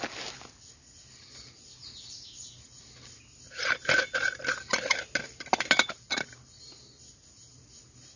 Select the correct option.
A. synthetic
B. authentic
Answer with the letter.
B